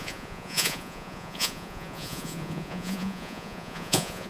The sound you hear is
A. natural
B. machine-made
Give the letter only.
B